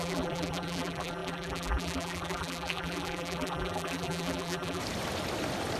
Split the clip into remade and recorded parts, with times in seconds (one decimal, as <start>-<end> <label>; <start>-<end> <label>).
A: 0.0-4.8 remade; 4.8-5.8 recorded